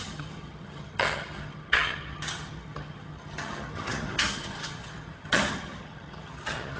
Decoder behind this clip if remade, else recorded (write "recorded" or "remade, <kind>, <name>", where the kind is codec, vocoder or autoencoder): remade, vocoder, HiFi-GAN